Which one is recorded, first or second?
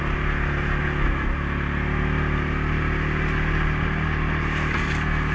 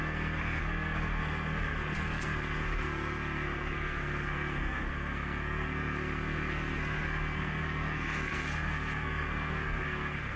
first